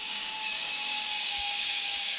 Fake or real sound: fake